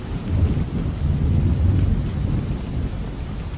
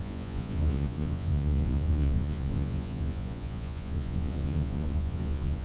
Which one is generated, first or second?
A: second